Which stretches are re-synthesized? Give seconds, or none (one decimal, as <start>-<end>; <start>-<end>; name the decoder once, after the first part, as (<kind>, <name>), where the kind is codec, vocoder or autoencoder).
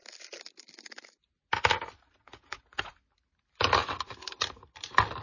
2.2-2.9 (vocoder, Vocos)